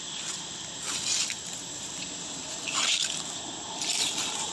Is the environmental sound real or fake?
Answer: real